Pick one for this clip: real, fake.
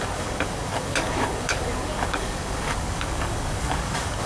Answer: fake